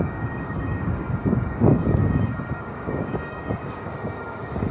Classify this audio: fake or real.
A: fake